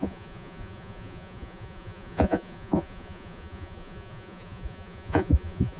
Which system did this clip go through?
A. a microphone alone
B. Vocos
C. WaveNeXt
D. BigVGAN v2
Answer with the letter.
B